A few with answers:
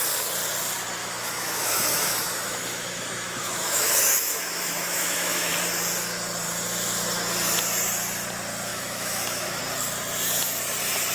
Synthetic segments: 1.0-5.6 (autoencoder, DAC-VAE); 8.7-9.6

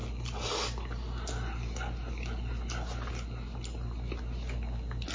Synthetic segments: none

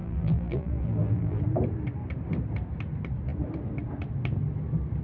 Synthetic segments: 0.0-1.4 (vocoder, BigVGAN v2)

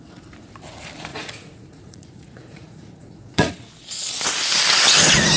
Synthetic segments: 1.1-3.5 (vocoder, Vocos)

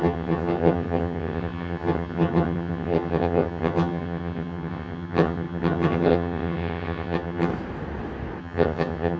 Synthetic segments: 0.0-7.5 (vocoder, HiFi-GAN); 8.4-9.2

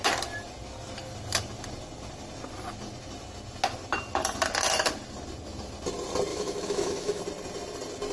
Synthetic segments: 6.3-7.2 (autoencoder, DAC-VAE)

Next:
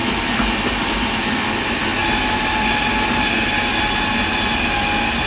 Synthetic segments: none